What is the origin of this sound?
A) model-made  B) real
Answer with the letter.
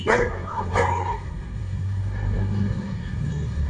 A